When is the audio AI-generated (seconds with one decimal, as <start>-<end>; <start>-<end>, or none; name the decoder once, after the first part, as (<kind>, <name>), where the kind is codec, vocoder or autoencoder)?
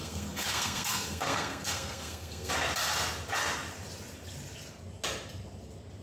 0.0-2.5 (codec, SNAC)